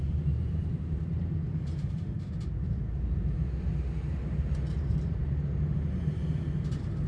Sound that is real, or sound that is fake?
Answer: fake